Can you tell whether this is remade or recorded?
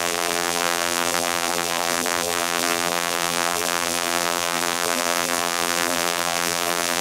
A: remade